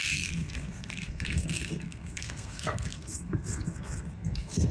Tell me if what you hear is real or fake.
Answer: fake